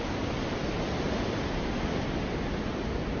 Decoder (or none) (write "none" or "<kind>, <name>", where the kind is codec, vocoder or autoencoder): none